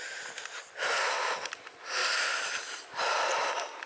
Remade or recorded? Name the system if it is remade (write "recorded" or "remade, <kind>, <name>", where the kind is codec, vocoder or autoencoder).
recorded